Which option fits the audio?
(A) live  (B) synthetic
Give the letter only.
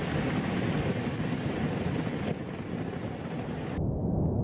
A